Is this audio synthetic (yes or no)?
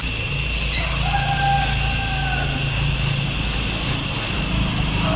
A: no